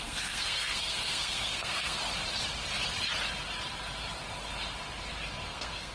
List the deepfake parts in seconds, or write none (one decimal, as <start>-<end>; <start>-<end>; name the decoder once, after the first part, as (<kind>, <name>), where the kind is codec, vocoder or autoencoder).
0.0-2.0 (codec, SNAC); 5.5-5.9